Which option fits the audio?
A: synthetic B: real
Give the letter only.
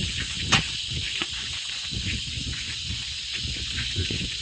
A